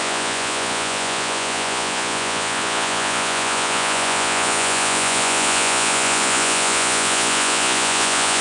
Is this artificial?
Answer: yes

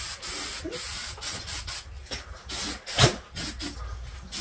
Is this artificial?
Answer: no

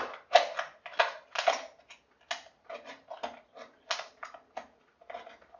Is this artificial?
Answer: no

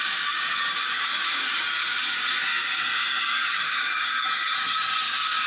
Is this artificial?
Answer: yes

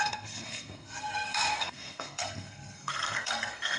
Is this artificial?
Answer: yes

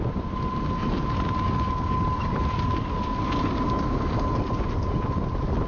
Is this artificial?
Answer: no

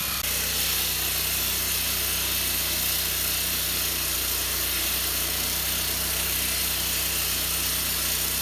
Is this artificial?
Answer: no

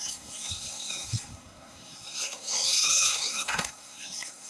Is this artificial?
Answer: yes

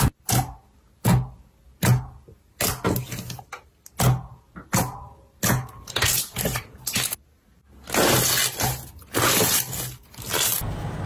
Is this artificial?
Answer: no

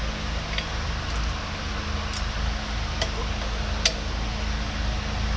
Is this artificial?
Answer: no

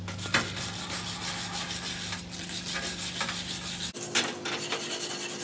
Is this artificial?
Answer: no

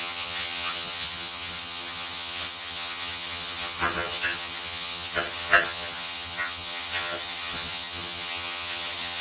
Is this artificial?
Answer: yes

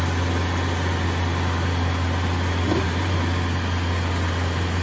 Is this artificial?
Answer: no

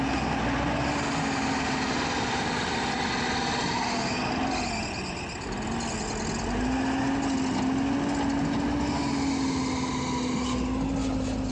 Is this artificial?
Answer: no